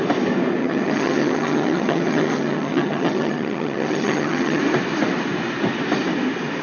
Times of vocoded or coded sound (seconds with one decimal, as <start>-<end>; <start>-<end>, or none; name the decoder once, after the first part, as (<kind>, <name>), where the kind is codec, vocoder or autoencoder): 0.6-4.6 (vocoder, HiFi-GAN)